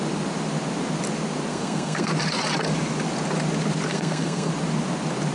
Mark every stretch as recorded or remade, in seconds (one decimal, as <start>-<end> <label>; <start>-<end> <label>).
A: 0.0-1.5 recorded; 1.5-2.1 remade; 2.1-3.9 recorded; 3.9-4.5 remade; 4.5-5.3 recorded